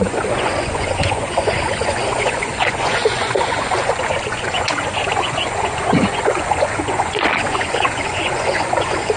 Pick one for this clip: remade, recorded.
remade